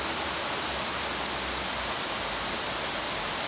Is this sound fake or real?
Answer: real